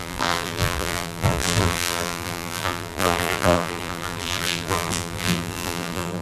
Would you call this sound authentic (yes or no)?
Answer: no